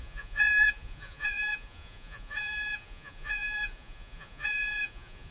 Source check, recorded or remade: remade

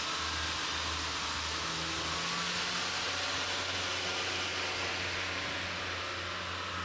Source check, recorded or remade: recorded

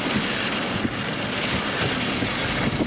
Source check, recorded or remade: recorded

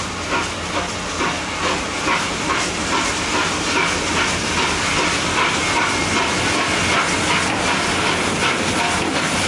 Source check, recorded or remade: recorded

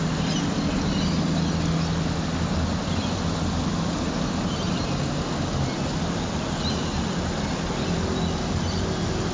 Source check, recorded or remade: recorded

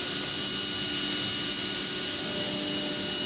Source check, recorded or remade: recorded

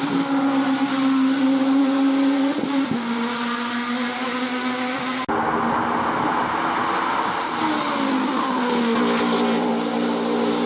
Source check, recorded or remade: recorded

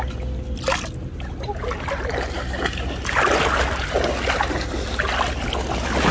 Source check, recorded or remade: recorded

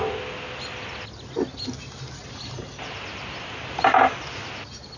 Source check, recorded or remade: recorded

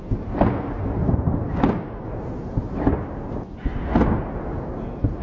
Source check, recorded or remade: recorded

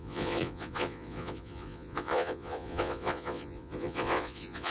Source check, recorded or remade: remade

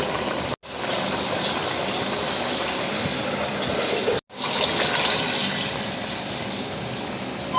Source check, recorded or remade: recorded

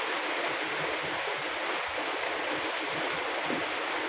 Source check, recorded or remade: recorded